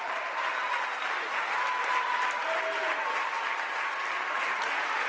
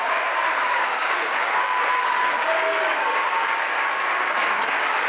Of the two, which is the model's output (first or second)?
second